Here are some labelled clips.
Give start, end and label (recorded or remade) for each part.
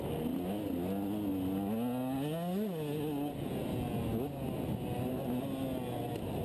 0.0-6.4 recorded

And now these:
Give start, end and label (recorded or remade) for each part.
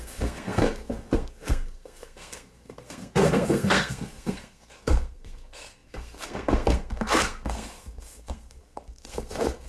0.0-9.7 remade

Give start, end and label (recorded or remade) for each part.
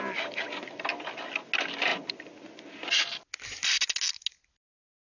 0.0-5.1 recorded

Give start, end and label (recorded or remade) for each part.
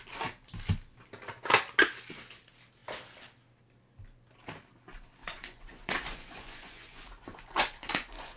0.0-5.2 recorded; 5.2-8.4 remade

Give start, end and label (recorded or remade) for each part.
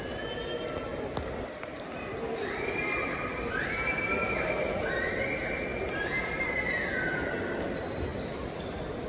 0.0-0.9 recorded; 0.9-2.1 remade; 2.1-5.7 recorded; 5.7-6.4 remade; 6.4-8.1 recorded; 8.1-9.1 remade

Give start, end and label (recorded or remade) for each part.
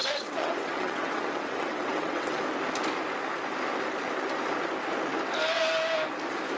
0.0-2.4 remade; 2.4-6.6 recorded